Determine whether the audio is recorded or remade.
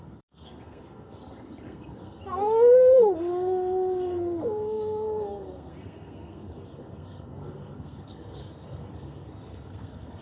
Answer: remade